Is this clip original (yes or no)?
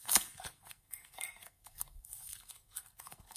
no